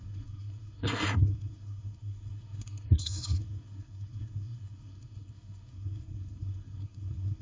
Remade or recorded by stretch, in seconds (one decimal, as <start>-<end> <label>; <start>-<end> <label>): 0.0-7.4 remade